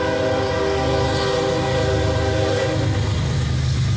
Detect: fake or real real